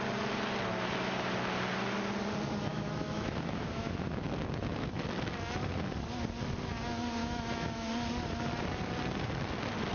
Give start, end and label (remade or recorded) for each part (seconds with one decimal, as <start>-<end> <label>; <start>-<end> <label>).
0.0-2.7 recorded; 2.7-5.0 remade; 5.0-7.2 recorded; 7.2-7.9 remade; 7.9-9.9 recorded